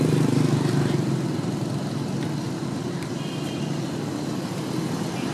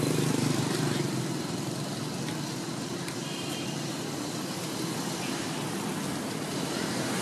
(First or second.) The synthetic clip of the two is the second